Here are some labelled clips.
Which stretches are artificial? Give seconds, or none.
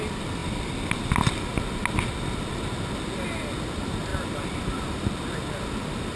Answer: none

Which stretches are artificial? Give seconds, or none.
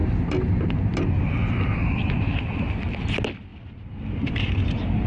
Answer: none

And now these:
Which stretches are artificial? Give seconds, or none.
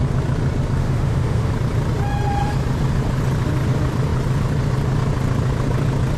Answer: 0.8-1.5 (autoencoder, DAC-VAE)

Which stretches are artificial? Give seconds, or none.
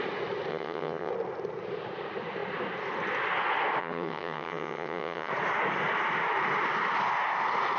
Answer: 0.5-1.1 (vocoder, HiFi-GAN); 3.8-5.3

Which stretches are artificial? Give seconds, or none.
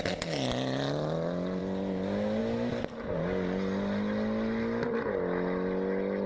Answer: none